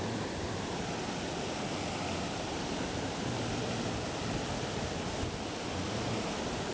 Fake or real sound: real